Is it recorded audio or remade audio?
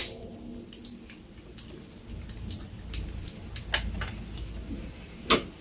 recorded